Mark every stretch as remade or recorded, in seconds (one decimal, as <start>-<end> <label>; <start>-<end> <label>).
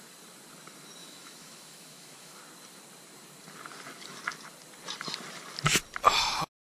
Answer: 0.0-1.0 recorded; 1.0-2.4 remade; 2.4-6.7 recorded